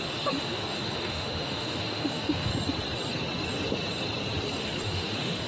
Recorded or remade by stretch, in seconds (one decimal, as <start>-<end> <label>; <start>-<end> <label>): 0.0-2.5 remade; 2.5-4.6 recorded; 4.6-5.5 remade